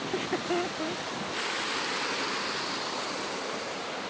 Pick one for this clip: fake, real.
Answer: real